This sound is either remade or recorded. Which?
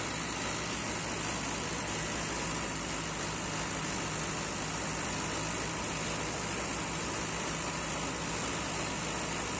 recorded